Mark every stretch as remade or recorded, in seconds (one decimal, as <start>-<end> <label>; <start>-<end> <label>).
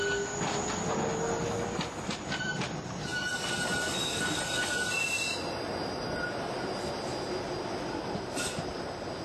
0.0-9.2 recorded